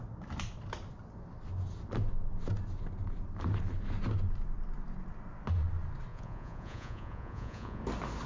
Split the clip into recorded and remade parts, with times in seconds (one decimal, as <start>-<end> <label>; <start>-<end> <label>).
0.0-6.1 recorded; 6.1-7.8 remade; 7.8-8.3 recorded